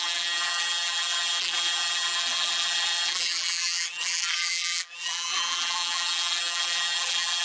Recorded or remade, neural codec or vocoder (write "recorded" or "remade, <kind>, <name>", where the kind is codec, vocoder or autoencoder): remade, vocoder, BigVGAN v2